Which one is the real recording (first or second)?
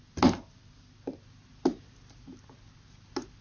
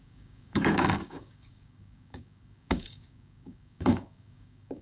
first